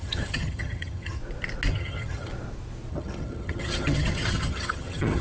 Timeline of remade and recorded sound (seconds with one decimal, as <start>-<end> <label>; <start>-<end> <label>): 0.0-1.2 remade; 1.2-1.7 recorded; 1.7-2.3 remade; 2.3-2.9 recorded; 2.9-5.2 remade